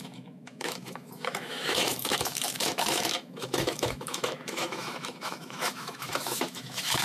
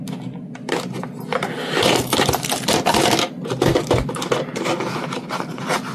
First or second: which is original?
second